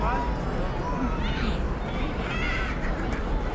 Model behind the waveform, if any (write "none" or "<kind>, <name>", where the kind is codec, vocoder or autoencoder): none